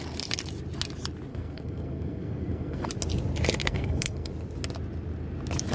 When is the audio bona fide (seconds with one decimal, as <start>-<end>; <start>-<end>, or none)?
0.0-1.3; 2.9-3.6; 4.3-5.7